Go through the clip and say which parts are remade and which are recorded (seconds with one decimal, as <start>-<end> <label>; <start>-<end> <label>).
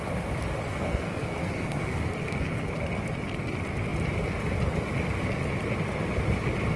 0.0-0.7 recorded; 0.7-2.7 remade; 2.7-6.8 recorded